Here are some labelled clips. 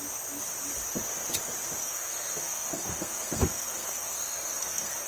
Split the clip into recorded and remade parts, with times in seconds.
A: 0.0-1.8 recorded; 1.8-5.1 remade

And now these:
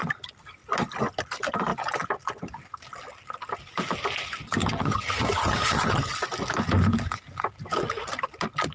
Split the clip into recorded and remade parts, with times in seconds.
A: 0.0-4.6 recorded; 4.6-6.1 remade; 6.1-8.7 recorded

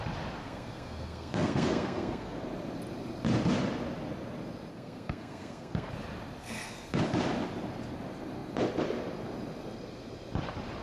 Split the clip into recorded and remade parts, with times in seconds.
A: 0.0-0.4 recorded; 0.4-2.4 remade; 2.4-4.7 recorded; 4.7-5.9 remade; 5.9-6.4 recorded; 6.4-7.0 remade; 7.0-10.8 recorded

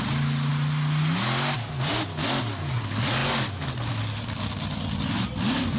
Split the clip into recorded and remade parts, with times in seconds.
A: 0.0-5.8 recorded

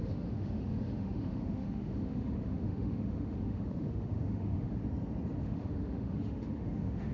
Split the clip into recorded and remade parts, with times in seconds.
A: 0.0-4.8 remade; 4.8-5.4 recorded; 5.4-7.1 remade

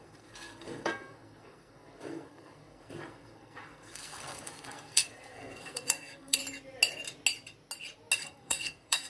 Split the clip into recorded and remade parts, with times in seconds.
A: 0.0-6.4 remade; 6.4-8.2 recorded; 8.2-9.1 remade